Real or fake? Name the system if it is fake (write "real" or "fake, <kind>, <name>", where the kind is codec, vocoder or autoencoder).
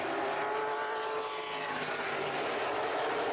real